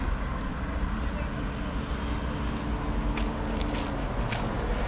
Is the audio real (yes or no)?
yes